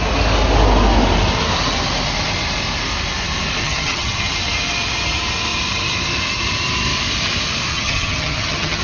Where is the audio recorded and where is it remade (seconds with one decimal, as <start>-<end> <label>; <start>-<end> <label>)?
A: 0.0-3.6 recorded; 3.6-4.3 remade; 4.3-7.7 recorded; 7.7-8.8 remade